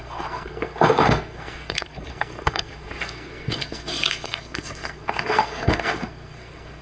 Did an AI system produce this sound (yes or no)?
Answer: yes